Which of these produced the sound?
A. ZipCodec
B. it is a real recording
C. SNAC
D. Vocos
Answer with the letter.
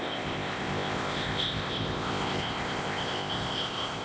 A